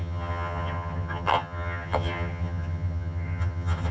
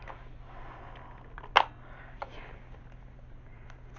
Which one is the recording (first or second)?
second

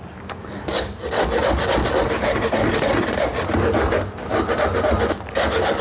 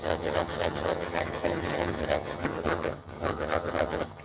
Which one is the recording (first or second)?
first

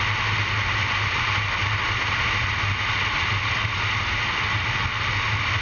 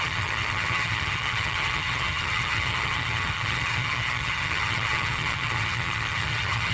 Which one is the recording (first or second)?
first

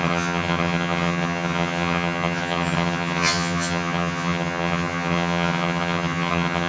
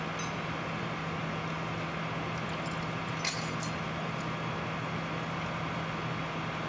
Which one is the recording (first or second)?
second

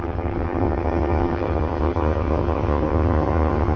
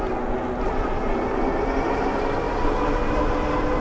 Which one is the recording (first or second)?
second